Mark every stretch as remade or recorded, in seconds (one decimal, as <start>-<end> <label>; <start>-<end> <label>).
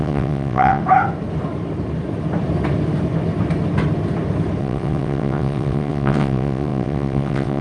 0.0-0.8 remade; 0.8-4.6 recorded; 4.6-7.6 remade